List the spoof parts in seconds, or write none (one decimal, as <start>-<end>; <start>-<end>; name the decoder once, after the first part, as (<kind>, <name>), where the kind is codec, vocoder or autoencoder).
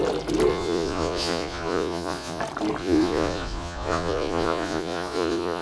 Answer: 0.5-2.4 (vocoder, Vocos); 2.8-5.6